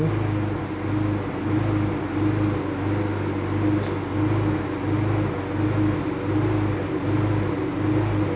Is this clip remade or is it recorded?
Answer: recorded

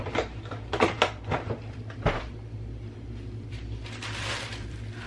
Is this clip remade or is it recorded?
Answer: remade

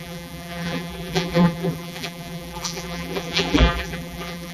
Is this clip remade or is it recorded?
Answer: remade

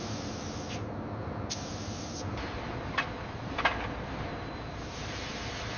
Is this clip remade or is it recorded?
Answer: recorded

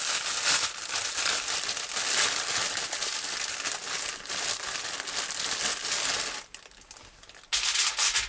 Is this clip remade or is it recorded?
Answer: recorded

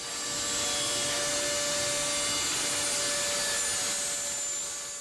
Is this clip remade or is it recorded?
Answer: recorded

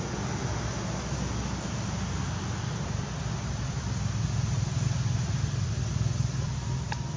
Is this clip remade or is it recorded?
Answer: recorded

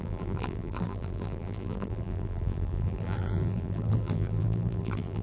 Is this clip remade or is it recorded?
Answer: remade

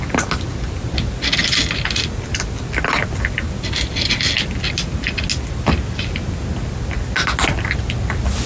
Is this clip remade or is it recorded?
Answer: recorded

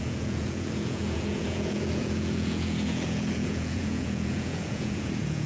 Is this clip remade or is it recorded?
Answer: remade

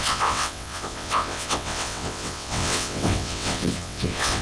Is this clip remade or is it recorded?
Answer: remade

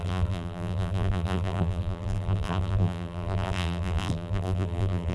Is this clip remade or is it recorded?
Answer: remade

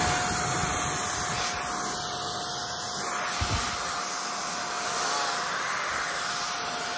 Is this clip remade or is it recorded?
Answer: recorded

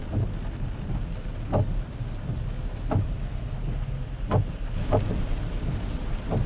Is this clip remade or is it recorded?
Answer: recorded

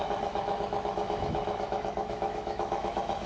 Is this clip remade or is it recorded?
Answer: remade